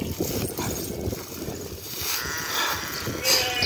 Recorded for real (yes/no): no